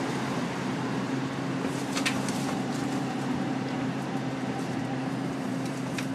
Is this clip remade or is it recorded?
remade